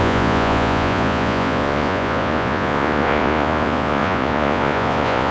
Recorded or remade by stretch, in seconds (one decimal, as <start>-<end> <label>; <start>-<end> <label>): 0.0-5.3 remade